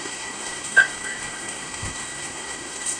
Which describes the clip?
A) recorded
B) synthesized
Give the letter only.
B